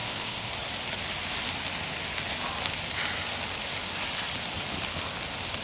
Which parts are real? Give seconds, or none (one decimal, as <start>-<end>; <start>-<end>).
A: 0.5-5.6